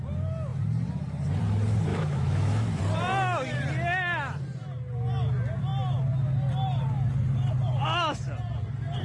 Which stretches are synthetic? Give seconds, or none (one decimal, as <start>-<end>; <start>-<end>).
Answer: 1.9-2.8